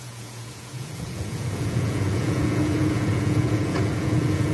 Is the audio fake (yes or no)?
yes